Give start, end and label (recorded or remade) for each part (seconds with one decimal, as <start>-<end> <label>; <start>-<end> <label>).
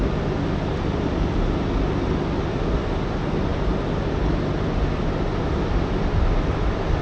0.0-7.0 recorded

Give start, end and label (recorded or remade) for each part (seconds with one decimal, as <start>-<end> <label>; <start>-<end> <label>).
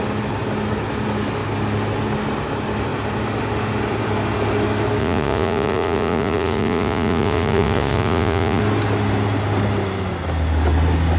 0.0-5.0 recorded; 5.0-8.6 remade; 8.6-11.2 recorded